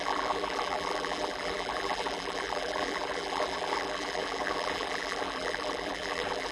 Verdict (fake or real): fake